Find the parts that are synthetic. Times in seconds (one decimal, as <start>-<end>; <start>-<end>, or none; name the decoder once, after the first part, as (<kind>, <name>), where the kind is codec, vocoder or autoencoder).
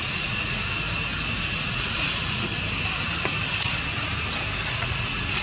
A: 0.0-0.6 (vocoder, Vocos); 1.3-2.5; 4.7-5.4